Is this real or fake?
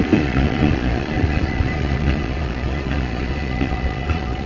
fake